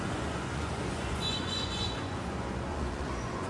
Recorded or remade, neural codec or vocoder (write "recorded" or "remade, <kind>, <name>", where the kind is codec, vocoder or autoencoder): remade, vocoder, Vocos